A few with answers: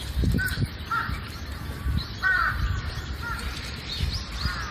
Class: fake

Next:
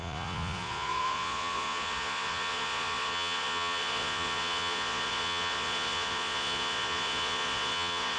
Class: fake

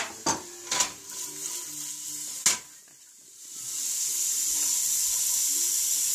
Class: real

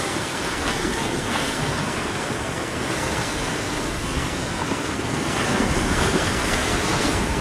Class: fake